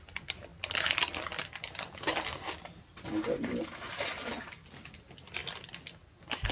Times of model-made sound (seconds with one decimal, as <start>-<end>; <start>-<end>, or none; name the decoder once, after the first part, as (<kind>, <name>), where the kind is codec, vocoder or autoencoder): none